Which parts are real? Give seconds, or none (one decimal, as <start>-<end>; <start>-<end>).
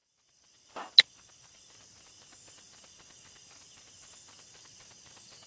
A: 0.0-5.5